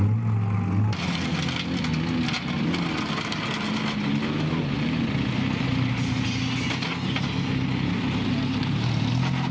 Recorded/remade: recorded